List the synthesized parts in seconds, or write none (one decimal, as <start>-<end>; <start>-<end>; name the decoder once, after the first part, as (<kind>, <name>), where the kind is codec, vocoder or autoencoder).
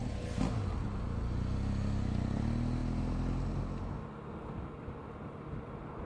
none